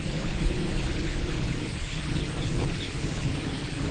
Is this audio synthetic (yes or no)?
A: yes